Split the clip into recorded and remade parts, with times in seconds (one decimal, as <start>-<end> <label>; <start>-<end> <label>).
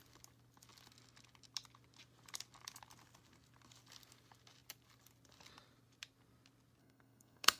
0.0-6.8 recorded; 6.8-7.6 remade